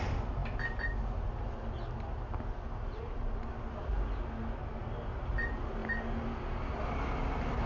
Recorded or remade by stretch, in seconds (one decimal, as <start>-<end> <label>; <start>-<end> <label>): 0.0-7.7 recorded